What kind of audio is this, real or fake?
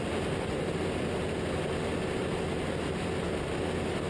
real